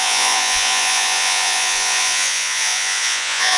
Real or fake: fake